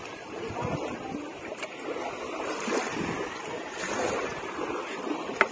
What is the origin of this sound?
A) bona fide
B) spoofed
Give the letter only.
B